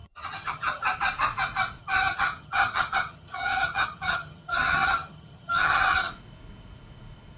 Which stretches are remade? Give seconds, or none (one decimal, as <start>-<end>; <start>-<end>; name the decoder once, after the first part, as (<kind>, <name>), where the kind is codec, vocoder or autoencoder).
0.0-1.0 (vocoder, HiFi-GAN); 1.8-6.1